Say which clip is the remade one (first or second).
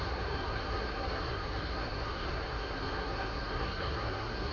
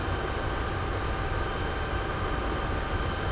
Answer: first